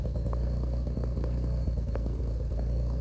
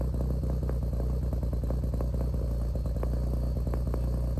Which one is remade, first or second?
first